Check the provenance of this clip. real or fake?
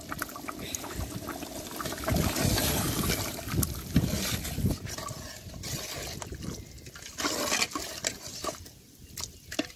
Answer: real